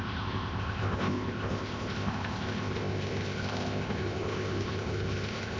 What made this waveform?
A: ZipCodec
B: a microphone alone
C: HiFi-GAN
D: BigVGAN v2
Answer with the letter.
A